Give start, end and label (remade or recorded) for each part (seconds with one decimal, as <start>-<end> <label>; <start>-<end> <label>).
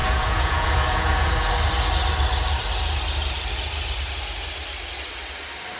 0.0-1.5 remade; 1.5-5.8 recorded